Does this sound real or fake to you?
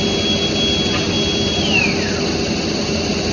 real